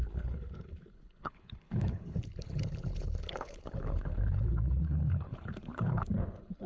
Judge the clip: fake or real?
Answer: fake